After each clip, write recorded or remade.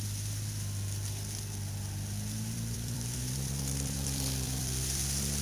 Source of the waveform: remade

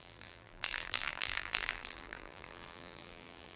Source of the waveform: remade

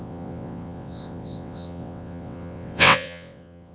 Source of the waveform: remade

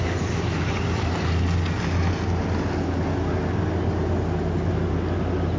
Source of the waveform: recorded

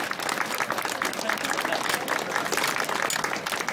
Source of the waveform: recorded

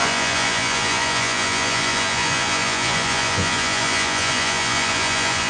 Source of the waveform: remade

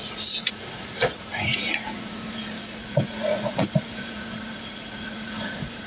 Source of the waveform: remade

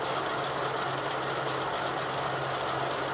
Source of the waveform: recorded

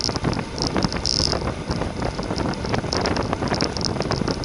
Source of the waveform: recorded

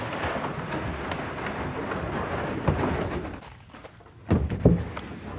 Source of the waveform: recorded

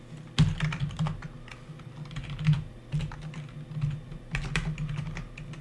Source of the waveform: recorded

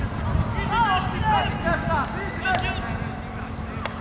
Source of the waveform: recorded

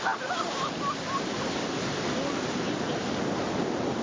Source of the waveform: recorded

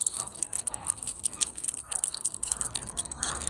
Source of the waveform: remade